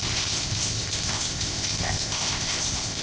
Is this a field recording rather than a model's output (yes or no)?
no